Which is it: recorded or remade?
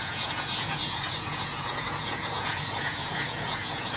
remade